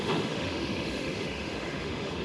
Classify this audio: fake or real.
fake